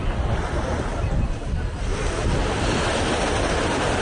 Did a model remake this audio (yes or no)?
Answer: no